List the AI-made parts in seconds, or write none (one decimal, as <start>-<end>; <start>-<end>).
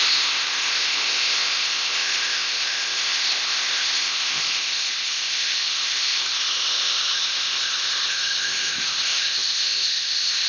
0.0-10.5